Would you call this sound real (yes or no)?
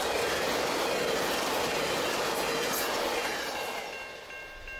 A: yes